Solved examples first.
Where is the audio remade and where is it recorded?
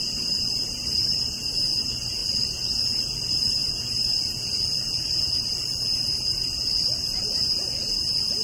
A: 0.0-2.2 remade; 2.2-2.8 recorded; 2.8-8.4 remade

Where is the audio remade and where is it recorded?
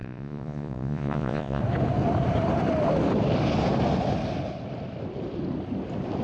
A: 0.0-1.6 remade; 1.6-6.2 recorded